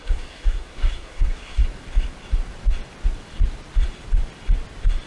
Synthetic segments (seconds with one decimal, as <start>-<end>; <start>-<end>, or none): 0.0-1.6